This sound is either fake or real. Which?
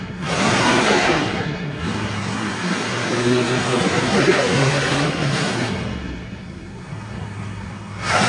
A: fake